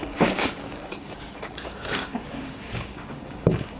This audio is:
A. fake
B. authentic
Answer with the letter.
A